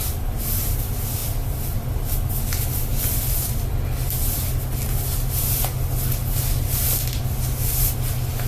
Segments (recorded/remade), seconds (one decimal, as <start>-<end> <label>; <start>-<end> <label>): 0.0-8.5 recorded